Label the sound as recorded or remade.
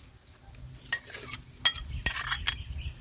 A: recorded